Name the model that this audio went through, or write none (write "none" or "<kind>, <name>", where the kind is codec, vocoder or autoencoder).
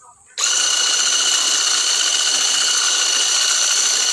none